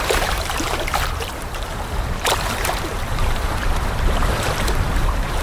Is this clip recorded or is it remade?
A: remade